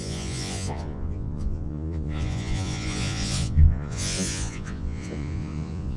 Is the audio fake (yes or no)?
yes